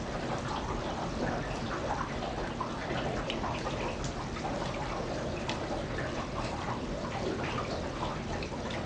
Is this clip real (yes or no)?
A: no